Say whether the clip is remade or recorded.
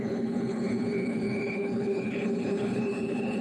remade